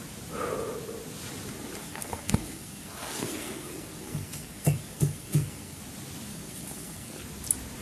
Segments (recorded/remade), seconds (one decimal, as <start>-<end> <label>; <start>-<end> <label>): 0.0-1.8 recorded; 1.8-5.8 remade; 5.8-6.3 recorded; 6.3-7.2 remade; 7.2-7.8 recorded

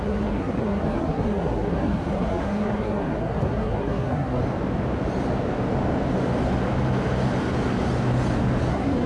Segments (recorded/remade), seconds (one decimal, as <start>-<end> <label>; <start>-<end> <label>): 0.0-4.4 remade; 4.4-8.7 recorded; 8.7-9.1 remade

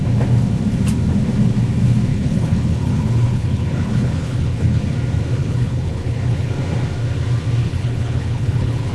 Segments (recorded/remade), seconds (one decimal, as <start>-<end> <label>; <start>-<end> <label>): 0.0-2.1 recorded; 2.1-4.8 remade; 4.8-5.4 recorded; 5.4-6.5 remade; 6.5-7.6 recorded; 7.6-8.9 remade

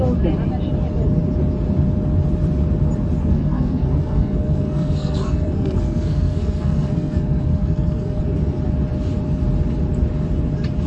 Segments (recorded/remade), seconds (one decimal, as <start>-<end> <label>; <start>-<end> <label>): 0.0-3.2 recorded; 3.2-8.2 remade; 8.2-10.9 recorded

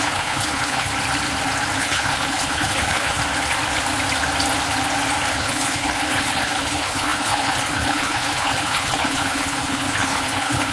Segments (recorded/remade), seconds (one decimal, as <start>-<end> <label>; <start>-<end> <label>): 0.0-0.9 remade; 0.9-1.8 recorded; 1.8-3.2 remade; 3.2-5.3 recorded; 5.3-10.7 remade

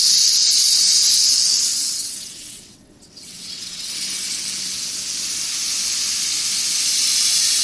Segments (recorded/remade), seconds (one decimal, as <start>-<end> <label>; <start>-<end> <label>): 0.0-1.7 recorded; 1.7-3.9 remade; 3.9-7.6 recorded

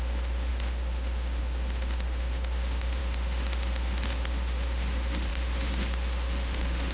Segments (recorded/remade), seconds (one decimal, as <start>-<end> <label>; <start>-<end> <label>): 0.0-6.9 remade